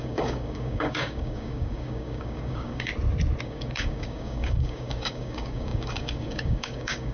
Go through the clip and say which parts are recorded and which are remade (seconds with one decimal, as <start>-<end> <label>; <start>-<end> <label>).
0.0-2.9 remade; 2.9-3.4 recorded; 3.4-7.1 remade